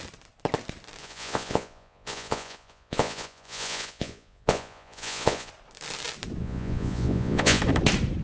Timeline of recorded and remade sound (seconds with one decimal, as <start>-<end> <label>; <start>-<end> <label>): 0.0-1.0 recorded; 1.0-5.5 remade; 5.5-6.4 recorded; 6.4-7.6 remade; 7.6-8.2 recorded